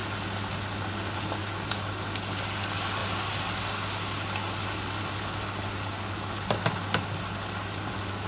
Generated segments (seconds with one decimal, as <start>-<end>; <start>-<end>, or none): none